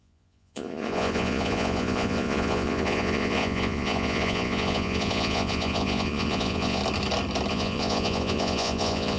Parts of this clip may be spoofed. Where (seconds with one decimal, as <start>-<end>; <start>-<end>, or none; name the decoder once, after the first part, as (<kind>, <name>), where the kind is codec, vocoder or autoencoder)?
0.0-6.8 (vocoder, Vocos); 7.5-9.2